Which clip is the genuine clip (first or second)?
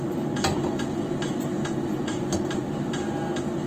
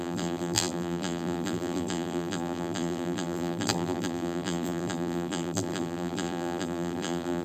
first